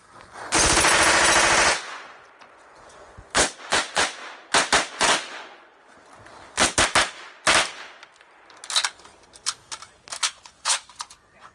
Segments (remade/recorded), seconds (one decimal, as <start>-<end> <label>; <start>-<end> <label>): 0.0-4.2 remade; 4.2-4.9 recorded; 4.9-5.7 remade; 5.7-10.2 recorded; 10.2-11.5 remade